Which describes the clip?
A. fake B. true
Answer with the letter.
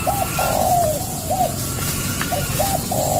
A